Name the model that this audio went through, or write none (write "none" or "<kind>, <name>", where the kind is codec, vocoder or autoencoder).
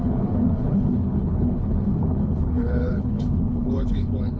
codec, HILCodec